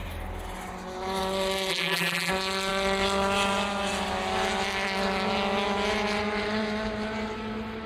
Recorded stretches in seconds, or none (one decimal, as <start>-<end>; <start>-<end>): 0.0-1.7; 2.3-7.9